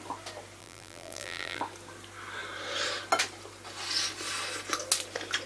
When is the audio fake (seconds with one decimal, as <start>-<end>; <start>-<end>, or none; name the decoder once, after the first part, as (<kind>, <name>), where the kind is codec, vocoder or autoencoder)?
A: 0.6-1.6 (vocoder, BigVGAN v2)